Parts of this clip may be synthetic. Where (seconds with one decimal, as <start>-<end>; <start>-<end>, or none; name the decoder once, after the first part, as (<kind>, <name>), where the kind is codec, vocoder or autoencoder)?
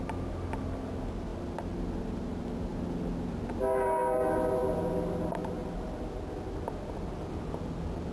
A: none